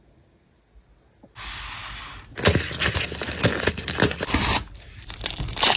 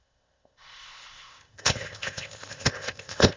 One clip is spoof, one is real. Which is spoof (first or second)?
second